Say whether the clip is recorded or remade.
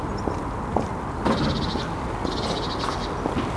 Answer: recorded